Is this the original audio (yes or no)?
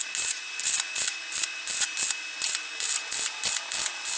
yes